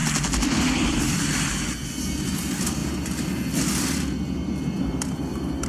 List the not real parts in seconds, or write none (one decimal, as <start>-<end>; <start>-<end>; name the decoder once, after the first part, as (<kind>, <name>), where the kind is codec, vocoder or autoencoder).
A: none